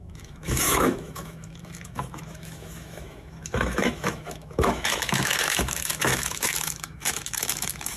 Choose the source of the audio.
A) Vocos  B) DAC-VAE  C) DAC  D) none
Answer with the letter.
B